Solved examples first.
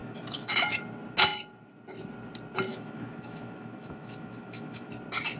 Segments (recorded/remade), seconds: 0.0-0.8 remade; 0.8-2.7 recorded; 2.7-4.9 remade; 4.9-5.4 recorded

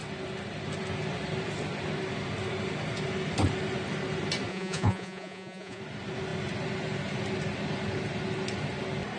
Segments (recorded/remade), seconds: 0.0-4.5 recorded; 4.5-5.8 remade; 5.8-9.2 recorded

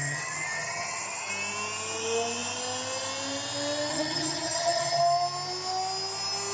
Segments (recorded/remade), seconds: 0.0-1.3 remade; 1.3-3.9 recorded; 3.9-5.0 remade; 5.0-6.5 recorded

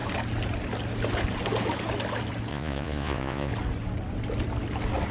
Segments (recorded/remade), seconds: 0.0-2.5 recorded; 2.5-3.5 remade; 3.5-5.1 recorded